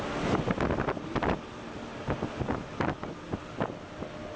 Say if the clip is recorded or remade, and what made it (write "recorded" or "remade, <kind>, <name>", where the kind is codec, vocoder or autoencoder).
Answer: recorded